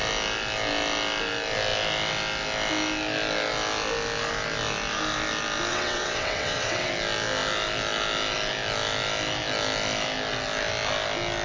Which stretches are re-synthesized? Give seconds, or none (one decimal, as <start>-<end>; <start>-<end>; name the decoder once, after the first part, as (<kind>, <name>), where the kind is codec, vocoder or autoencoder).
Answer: 5.7-6.9 (vocoder, WaveNeXt)